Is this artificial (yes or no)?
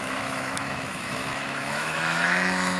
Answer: yes